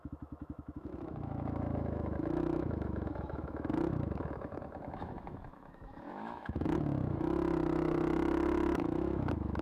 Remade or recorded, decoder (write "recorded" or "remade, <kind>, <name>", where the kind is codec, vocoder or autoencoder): remade, autoencoder, DAC-VAE